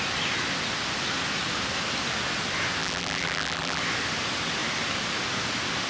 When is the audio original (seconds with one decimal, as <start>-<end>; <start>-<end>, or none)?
0.0-2.8; 3.8-5.9